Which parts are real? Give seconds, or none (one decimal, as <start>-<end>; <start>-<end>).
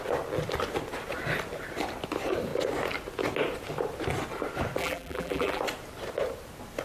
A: 0.0-4.8; 5.6-6.8